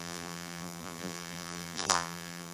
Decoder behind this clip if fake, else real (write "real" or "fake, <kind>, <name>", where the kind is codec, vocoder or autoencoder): fake, vocoder, BigVGAN v2